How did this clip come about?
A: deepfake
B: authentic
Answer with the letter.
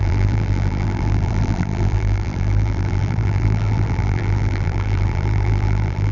A